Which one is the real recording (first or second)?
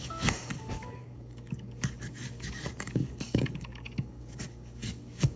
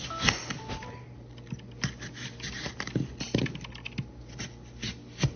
second